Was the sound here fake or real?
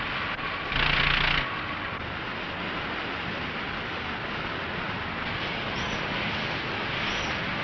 real